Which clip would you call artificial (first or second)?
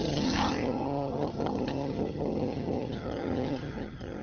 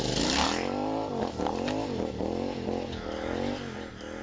first